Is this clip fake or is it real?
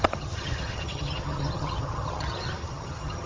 fake